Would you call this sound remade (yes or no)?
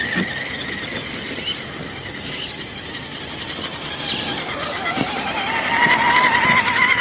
no